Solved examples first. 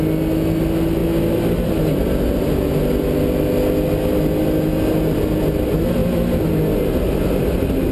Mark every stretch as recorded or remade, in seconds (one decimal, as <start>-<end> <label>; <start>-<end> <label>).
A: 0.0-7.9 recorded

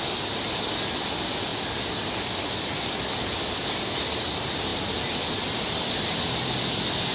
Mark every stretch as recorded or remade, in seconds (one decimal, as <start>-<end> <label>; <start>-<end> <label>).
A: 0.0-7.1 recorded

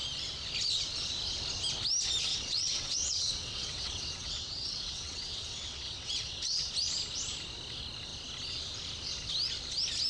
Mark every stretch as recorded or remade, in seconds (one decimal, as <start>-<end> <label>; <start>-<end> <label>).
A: 0.0-2.3 recorded; 2.3-6.7 remade; 6.7-10.1 recorded